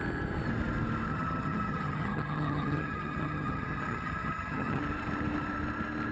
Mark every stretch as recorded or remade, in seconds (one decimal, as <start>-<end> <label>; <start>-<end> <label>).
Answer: 0.0-1.1 recorded; 1.1-4.8 remade; 4.8-6.1 recorded